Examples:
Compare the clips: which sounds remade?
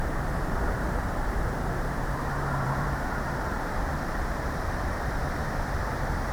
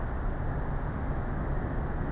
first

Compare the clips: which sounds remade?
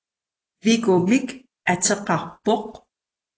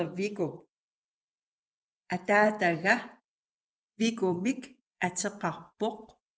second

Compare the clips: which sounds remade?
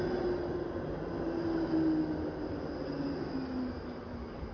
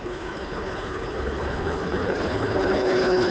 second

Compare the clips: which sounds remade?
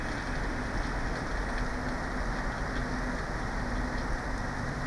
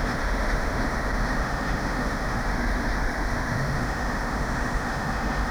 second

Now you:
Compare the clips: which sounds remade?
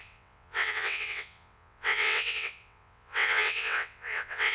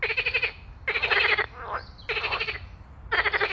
first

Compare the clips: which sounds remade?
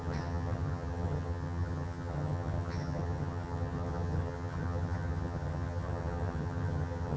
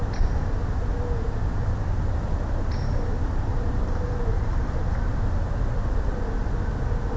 first